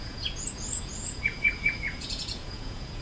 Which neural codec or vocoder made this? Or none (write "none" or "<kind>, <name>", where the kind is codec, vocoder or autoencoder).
vocoder, Vocos